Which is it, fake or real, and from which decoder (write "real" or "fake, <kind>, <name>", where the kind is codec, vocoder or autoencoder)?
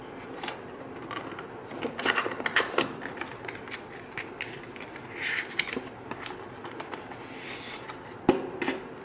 real